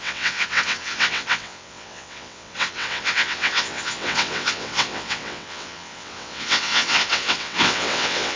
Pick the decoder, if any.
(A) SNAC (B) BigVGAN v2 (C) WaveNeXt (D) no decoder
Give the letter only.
C